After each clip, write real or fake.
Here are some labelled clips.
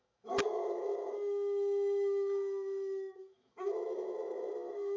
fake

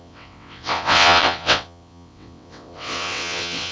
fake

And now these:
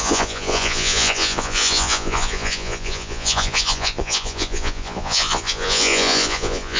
fake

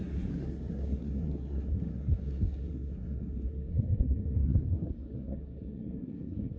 fake